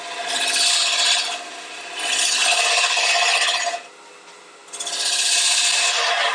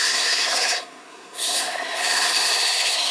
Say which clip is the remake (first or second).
second